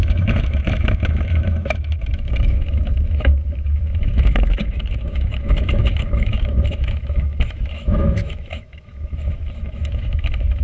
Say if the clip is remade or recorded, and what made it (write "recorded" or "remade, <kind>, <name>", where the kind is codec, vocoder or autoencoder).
remade, autoencoder, DAC-VAE